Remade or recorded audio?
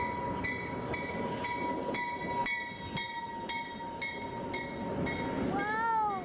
recorded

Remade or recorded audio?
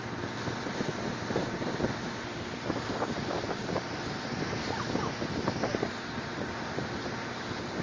recorded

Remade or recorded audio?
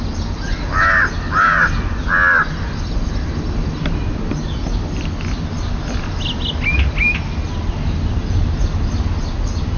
recorded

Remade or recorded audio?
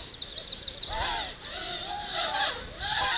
remade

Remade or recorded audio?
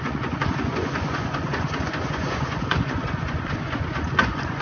remade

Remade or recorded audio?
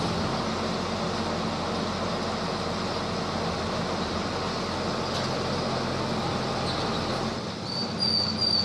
recorded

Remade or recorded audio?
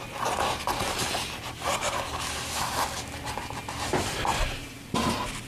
recorded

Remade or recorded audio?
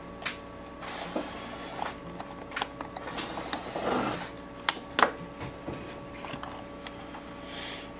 recorded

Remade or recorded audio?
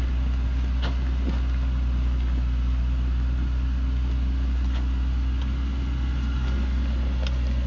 recorded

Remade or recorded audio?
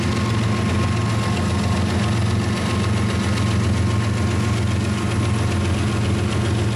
recorded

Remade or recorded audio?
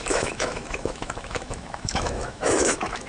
remade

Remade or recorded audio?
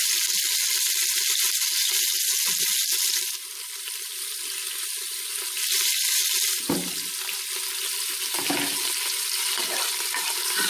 recorded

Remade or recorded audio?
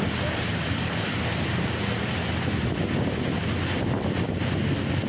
recorded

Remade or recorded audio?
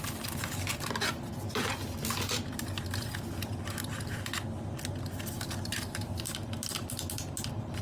recorded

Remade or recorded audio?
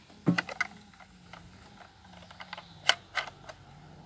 recorded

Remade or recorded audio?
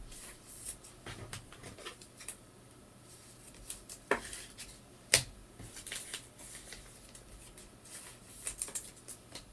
remade